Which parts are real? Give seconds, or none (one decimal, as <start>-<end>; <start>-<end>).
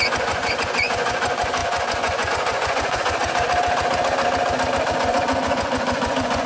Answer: 3.2-5.0